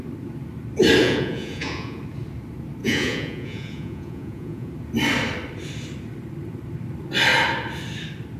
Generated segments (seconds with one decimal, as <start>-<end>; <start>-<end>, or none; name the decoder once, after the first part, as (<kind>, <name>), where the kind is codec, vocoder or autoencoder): 1.0-2.0 (vocoder, Vocos); 2.8-4.7